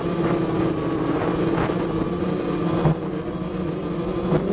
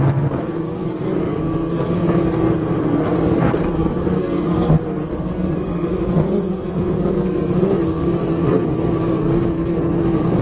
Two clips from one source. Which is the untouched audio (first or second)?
first